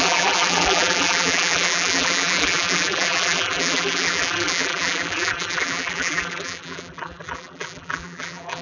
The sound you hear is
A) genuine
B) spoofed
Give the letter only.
B